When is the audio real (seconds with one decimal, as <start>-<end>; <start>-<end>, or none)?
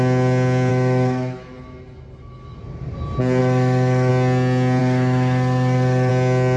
0.0-0.7; 2.6-3.4; 4.1-4.8; 6.1-6.6